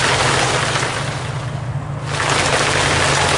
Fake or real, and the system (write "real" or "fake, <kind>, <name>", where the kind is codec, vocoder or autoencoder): real